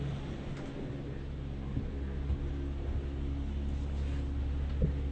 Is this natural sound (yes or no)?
yes